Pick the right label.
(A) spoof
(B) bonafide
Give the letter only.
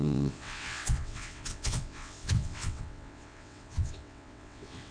A